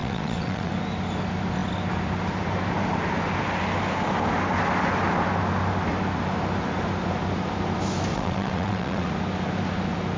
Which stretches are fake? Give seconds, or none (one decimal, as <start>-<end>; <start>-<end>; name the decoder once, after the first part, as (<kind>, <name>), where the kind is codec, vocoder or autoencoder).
0.0-0.7 (vocoder, WaveNeXt); 8.1-9.1